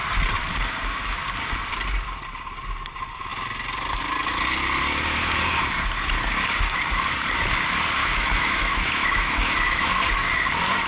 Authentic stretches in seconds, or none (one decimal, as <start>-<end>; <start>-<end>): 0.0-8.0; 9.9-10.9

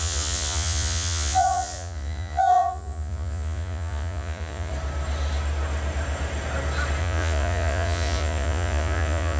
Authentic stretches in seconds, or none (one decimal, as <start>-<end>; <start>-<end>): 4.7-7.0

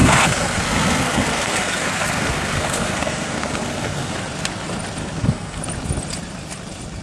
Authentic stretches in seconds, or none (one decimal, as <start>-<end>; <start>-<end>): 4.2-5.0; 5.6-7.0

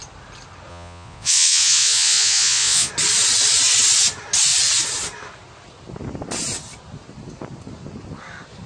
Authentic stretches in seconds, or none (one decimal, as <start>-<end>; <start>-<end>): 0.0-0.7; 2.9-8.7

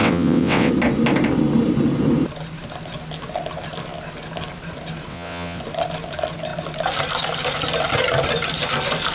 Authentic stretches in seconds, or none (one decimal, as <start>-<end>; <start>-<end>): 0.7-5.1; 5.6-9.1